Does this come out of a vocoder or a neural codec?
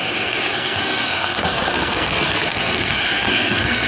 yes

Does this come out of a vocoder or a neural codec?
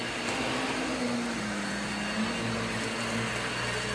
no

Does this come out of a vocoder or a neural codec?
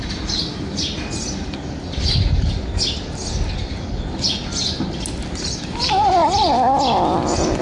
no